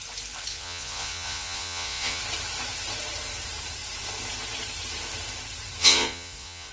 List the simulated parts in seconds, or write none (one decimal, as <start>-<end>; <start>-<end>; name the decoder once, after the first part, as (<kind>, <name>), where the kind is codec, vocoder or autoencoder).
0.5-2.2 (vocoder, Vocos); 5.8-6.7